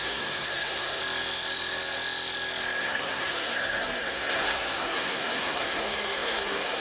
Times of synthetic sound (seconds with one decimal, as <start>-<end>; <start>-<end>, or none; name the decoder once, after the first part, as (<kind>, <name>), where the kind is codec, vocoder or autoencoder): 0.0-1.0 (codec, SNAC); 2.8-6.8